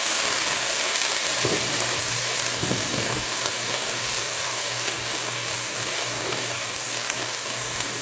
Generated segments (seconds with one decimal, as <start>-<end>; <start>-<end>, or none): 0.0-1.3; 2.0-8.0